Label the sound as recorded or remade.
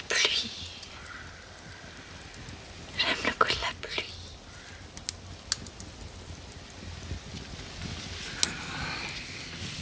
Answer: recorded